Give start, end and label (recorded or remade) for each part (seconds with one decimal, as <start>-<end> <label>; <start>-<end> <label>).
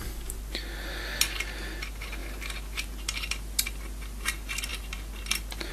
0.0-5.7 recorded